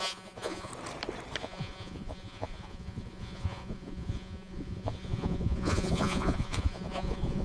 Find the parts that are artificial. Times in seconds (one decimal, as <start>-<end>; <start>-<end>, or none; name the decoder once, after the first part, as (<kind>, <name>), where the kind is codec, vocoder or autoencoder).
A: 0.0-0.7 (vocoder, Vocos); 1.4-7.4